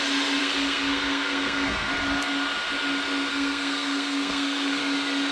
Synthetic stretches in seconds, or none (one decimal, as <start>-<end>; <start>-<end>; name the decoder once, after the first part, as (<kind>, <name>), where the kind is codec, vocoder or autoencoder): 0.4-1.9 (codec, SNAC); 3.3-4.8